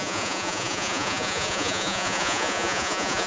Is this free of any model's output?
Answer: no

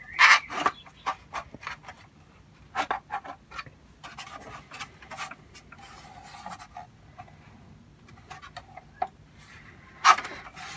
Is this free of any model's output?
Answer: yes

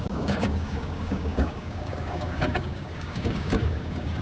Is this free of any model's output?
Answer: no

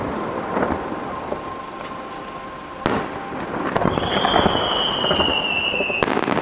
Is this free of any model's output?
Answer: yes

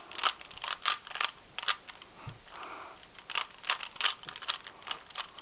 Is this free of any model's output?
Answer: yes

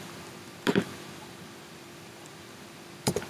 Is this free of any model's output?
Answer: no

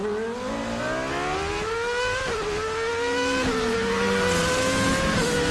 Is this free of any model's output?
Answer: yes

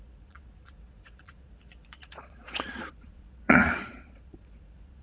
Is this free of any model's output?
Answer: no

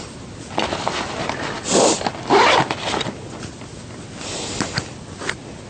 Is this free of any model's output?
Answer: yes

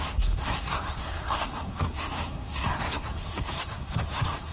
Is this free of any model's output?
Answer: no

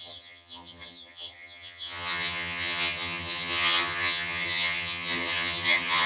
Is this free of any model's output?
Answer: no